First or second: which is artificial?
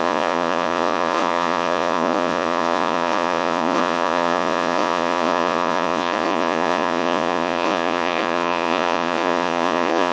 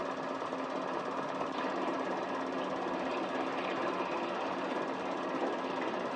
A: first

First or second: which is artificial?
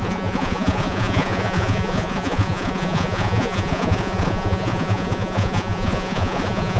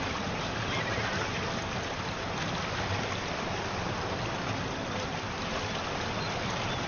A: first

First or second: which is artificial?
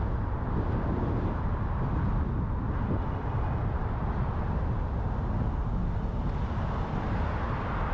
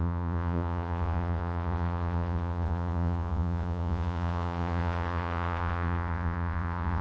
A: second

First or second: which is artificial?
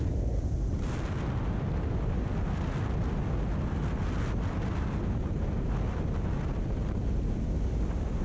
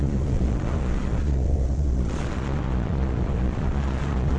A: second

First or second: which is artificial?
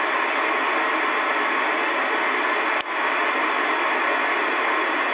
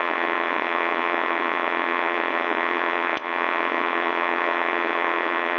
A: second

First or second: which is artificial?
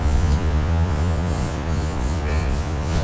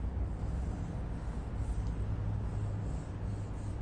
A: first